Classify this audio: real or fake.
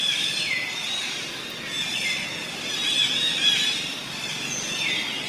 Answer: real